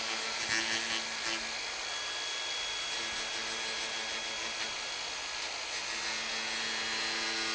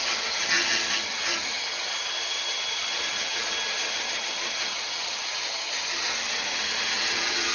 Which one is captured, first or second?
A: first